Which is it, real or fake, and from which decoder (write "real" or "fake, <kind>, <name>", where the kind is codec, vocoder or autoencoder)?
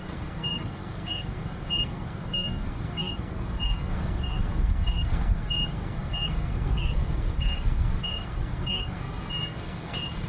fake, codec, SNAC